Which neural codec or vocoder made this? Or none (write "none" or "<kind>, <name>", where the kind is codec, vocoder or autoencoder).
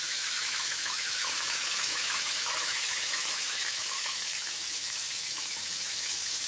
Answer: autoencoder, DAC-VAE